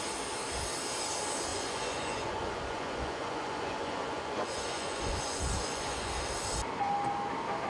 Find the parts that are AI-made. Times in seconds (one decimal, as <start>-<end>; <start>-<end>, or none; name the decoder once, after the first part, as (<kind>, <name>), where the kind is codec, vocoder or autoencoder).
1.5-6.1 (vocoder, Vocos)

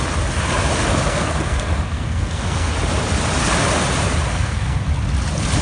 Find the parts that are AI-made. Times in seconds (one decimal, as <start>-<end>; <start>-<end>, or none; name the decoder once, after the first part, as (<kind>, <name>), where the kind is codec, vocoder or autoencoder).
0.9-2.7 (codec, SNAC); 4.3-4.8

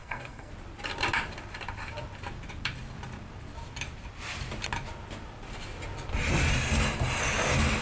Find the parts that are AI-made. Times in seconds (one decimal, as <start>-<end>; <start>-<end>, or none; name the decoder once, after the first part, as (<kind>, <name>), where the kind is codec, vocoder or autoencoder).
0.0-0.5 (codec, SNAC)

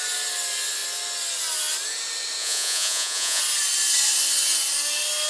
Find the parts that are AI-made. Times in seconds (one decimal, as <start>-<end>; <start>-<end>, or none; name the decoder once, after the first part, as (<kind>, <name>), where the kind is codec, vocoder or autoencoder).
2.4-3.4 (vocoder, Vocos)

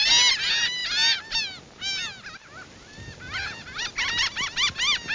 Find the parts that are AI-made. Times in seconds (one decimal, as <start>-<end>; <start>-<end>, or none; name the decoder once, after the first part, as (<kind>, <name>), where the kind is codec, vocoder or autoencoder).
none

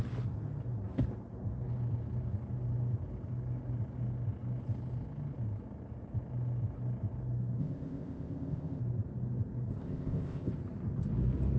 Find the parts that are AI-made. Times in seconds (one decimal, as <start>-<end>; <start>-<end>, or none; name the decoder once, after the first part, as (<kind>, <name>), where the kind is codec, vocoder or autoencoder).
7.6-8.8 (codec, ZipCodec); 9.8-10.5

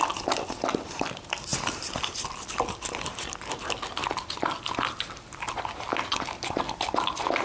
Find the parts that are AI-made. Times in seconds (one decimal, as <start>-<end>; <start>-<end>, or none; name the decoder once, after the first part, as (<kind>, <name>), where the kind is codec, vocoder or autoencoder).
none

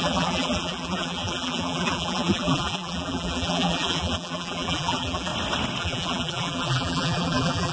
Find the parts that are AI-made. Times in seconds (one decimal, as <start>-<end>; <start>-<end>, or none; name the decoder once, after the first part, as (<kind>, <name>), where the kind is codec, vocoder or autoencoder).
0.0-5.3 (vocoder, BigVGAN v2); 5.8-7.7